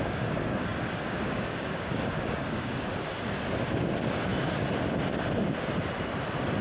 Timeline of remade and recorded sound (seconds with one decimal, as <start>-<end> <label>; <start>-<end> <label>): 0.0-2.9 remade; 2.9-3.7 recorded; 3.7-4.3 remade; 4.3-6.6 recorded